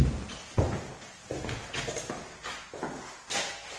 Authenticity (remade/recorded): recorded